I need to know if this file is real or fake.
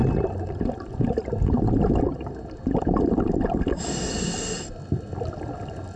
real